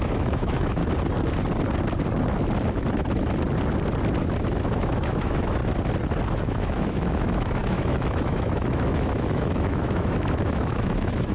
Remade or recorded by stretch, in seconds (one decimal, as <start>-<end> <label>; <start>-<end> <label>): 0.0-0.8 remade; 0.8-4.6 recorded; 4.6-5.6 remade; 5.6-6.4 recorded; 6.4-11.3 remade